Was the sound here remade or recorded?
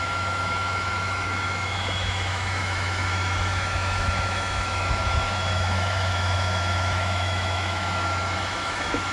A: remade